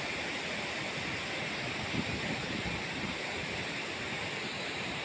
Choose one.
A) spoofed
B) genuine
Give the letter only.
B